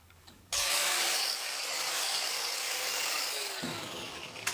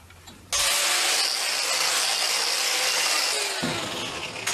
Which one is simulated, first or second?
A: first